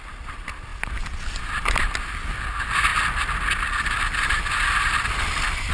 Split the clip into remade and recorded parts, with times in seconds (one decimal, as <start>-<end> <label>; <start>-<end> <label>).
0.0-5.7 recorded